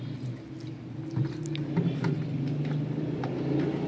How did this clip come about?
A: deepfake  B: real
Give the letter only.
B